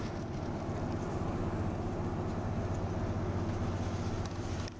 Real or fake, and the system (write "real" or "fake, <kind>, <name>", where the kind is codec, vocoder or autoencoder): real